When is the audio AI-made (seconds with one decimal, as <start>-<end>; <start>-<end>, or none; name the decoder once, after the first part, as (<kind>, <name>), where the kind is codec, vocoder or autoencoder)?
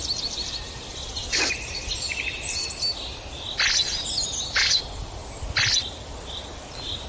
none